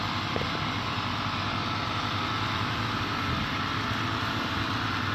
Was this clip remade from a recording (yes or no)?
no